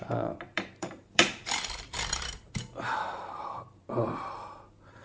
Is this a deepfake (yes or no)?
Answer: yes